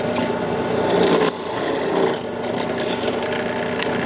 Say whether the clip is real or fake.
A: real